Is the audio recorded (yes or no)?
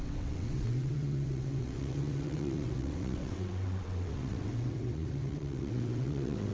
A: no